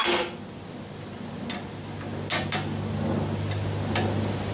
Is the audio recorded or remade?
recorded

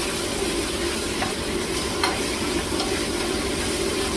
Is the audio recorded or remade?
remade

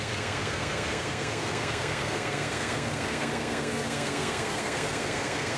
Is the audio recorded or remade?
remade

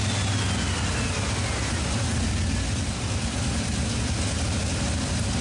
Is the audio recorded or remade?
recorded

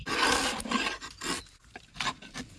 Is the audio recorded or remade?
recorded